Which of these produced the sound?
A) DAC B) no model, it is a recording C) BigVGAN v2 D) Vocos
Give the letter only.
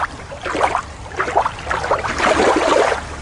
B